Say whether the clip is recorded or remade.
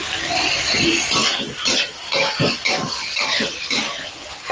recorded